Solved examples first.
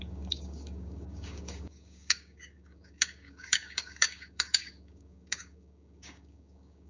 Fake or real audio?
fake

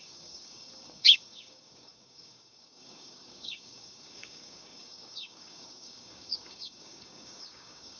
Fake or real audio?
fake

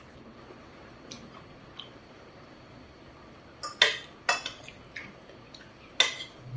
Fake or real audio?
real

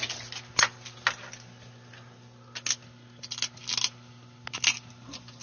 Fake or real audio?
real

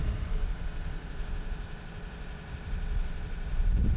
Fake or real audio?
real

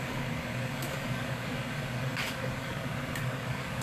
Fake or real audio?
fake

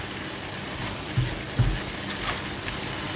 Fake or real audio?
real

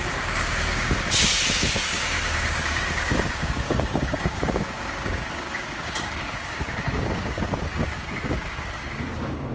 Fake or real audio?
fake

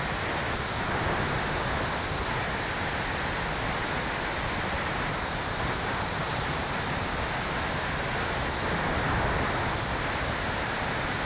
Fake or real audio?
real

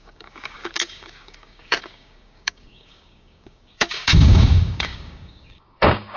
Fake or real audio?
fake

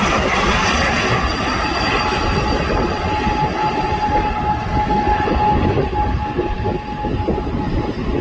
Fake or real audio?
real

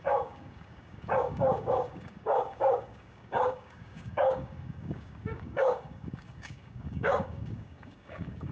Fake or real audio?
fake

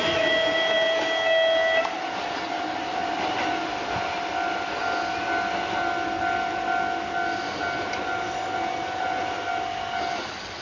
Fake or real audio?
real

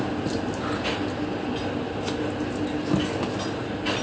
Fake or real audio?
real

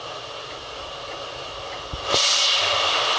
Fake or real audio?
real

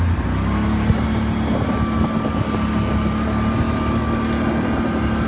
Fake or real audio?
real